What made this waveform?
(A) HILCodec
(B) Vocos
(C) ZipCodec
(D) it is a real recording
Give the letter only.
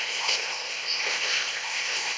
C